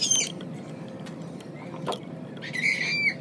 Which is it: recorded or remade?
recorded